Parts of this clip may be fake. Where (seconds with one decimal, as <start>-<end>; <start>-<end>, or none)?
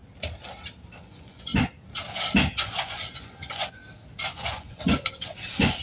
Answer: 1.0-1.5; 2.5-3.8; 4.3-5.8